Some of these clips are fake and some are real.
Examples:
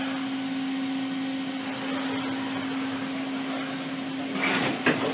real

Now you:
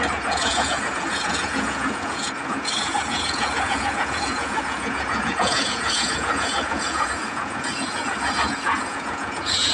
fake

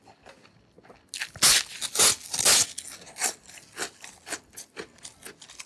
real